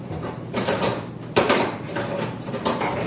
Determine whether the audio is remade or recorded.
remade